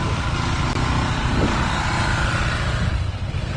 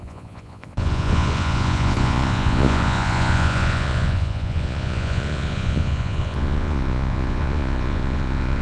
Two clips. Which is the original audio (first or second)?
first